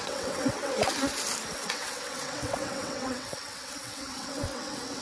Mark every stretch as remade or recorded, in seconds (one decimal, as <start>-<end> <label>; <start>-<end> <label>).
0.0-0.9 remade; 0.9-1.5 recorded; 1.5-5.0 remade